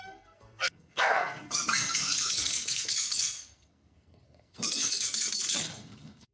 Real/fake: fake